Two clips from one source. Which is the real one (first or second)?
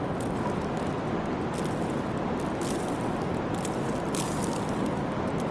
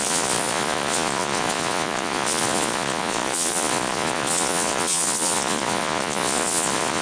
first